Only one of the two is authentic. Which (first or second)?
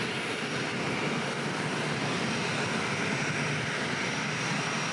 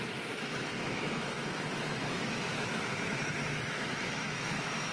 first